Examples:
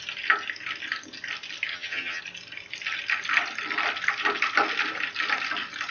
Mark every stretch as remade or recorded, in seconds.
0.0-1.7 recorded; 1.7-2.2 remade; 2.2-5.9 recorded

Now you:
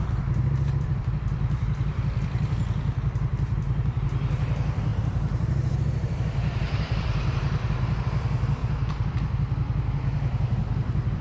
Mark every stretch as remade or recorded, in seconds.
0.0-4.9 recorded; 4.9-8.0 remade; 8.0-8.6 recorded; 8.6-9.1 remade; 9.1-11.2 recorded

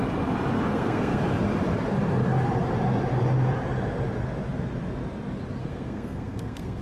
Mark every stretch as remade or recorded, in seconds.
0.0-0.7 recorded; 0.7-1.2 remade; 1.2-5.6 recorded; 5.6-6.8 remade